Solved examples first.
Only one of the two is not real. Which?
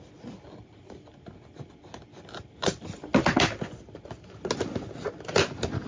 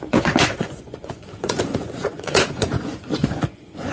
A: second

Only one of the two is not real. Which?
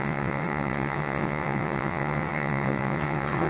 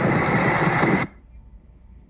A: first